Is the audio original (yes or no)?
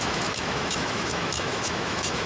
no